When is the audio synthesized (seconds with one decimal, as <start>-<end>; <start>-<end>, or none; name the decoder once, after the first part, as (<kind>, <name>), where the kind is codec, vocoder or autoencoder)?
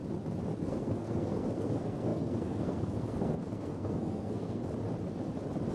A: 0.6-4.6 (codec, SNAC)